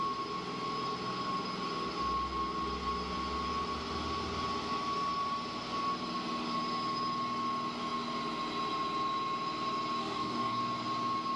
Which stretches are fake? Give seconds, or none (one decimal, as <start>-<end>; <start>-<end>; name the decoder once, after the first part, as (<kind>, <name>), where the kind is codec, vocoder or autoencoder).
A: 10.0-10.6 (codec, DAC)